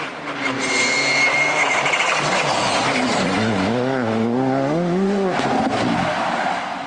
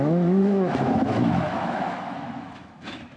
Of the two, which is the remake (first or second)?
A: second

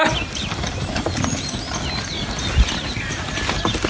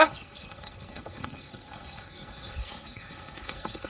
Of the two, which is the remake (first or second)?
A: second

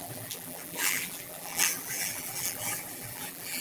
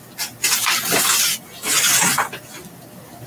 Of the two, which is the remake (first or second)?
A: first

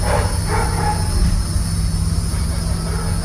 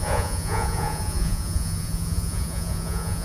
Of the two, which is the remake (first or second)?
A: second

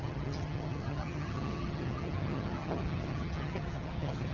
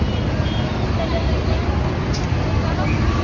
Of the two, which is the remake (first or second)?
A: first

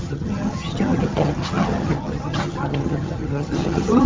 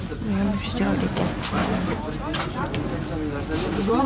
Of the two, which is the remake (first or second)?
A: first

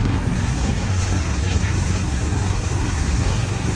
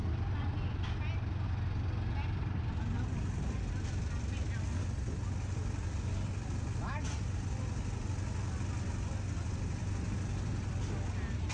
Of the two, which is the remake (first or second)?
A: first